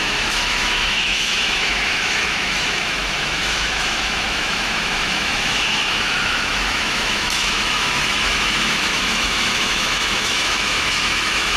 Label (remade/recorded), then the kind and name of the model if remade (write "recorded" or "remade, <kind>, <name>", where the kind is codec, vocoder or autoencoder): remade, autoencoder, DAC-VAE